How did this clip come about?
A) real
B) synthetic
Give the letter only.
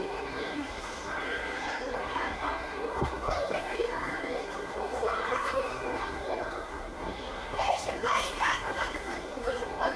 B